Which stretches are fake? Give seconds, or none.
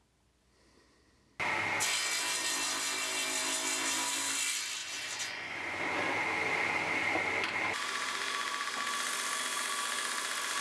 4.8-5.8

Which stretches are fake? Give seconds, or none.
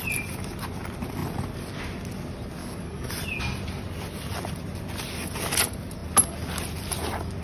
2.6-3.1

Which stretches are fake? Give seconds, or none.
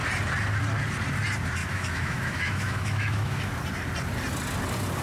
1.6-3.5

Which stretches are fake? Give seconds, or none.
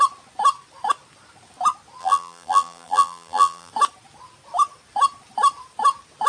2.0-3.7